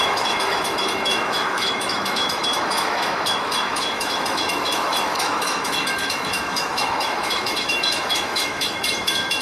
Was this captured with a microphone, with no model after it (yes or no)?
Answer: no